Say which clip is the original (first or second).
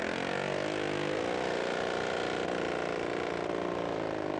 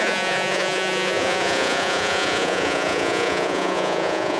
first